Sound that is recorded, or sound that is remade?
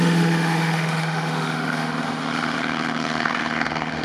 remade